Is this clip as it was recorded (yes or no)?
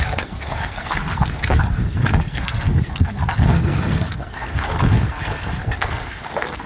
no